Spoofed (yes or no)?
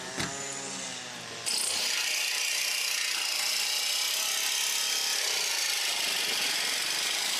no